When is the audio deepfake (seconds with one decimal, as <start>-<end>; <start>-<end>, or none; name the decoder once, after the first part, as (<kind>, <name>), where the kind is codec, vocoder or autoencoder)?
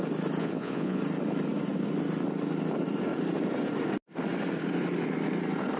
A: 0.4-1.0 (vocoder, Vocos)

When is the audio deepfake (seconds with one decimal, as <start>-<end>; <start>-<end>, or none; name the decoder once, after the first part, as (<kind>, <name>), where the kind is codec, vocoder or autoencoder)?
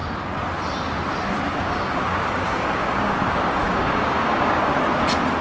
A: 1.5-4.7 (codec, DAC)